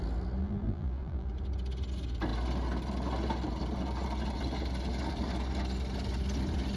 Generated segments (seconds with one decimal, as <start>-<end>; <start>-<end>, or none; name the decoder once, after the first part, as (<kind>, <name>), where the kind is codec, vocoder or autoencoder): 0.4-1.3 (vocoder, BigVGAN v2)